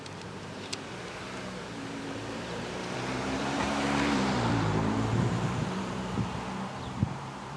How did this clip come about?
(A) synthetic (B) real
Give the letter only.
A